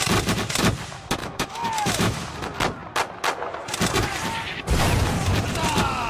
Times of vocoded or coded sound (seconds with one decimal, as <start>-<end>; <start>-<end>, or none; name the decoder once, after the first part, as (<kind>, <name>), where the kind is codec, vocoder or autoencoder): 1.2-2.2 (autoencoder, DAC-VAE)